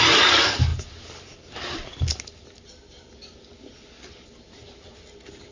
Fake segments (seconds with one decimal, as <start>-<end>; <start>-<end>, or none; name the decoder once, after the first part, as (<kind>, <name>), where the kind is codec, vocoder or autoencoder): none